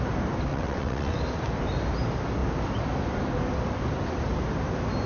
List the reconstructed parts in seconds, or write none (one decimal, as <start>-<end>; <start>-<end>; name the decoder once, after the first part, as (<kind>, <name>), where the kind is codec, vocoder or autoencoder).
0.5-1.2 (vocoder, WaveNeXt)